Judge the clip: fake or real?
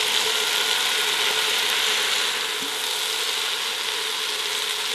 real